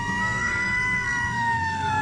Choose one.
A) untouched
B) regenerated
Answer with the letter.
B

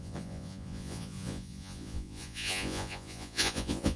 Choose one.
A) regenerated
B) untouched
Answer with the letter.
A